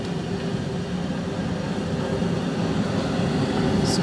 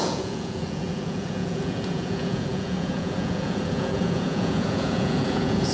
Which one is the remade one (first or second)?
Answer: second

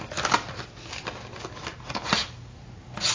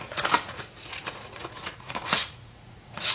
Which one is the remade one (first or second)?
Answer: second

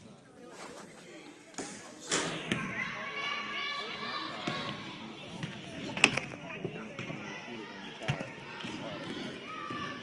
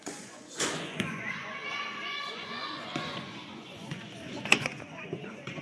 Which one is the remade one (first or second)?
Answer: second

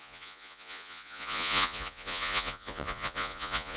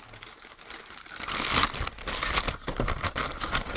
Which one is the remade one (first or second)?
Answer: first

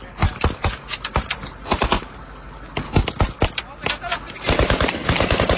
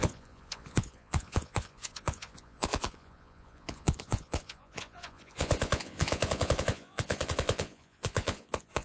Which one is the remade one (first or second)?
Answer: second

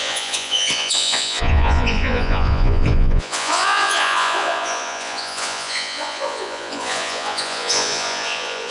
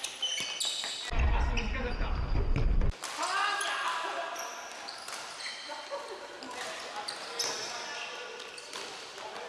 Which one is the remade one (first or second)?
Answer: first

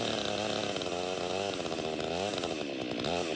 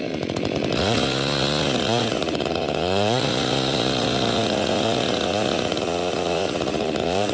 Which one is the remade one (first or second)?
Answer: second